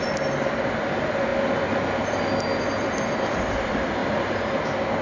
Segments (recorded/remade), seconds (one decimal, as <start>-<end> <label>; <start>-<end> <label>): 0.0-5.0 recorded